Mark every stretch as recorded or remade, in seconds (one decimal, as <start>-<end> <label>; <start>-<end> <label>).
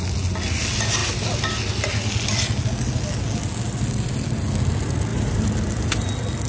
0.0-5.1 recorded; 5.1-6.1 remade; 6.1-6.5 recorded